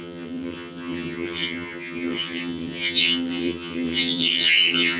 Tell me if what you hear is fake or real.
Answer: fake